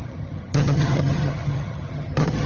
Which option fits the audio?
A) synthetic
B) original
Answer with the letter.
A